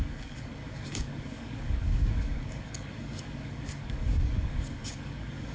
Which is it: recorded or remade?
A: remade